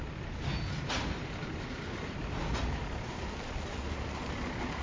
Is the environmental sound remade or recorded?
recorded